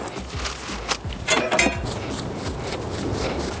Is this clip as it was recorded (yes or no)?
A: yes